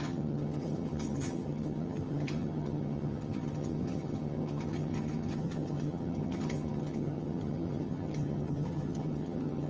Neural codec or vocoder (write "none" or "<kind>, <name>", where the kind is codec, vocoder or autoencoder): vocoder, HiFi-GAN